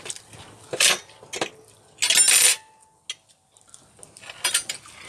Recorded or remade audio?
recorded